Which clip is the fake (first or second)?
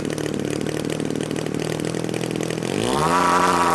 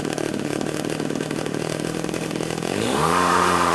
second